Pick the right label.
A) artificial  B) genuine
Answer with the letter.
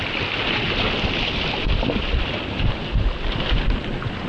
B